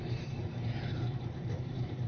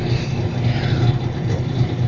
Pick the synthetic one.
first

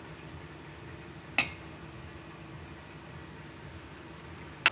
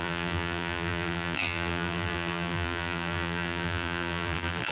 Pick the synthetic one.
second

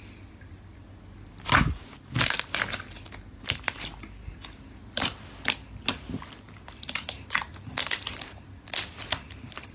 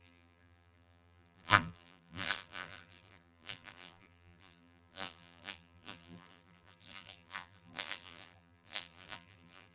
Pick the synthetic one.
second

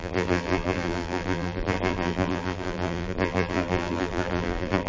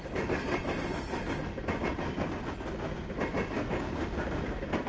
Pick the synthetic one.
first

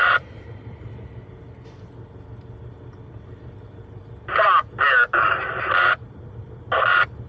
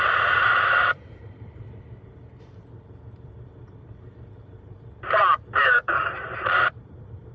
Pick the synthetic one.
second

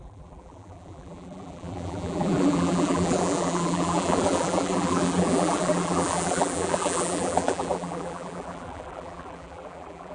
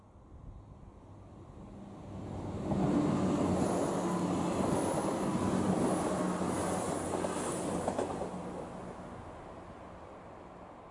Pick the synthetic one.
first